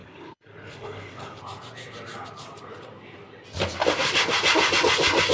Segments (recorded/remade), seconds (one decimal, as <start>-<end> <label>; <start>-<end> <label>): 0.0-1.4 remade; 1.4-5.3 recorded